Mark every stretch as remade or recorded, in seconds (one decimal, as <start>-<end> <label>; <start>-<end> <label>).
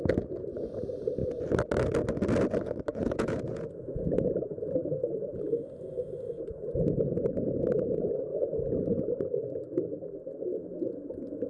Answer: 0.0-2.9 recorded; 2.9-5.4 remade; 5.4-8.3 recorded; 8.3-8.8 remade; 8.8-11.5 recorded